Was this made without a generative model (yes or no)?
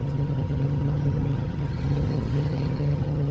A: no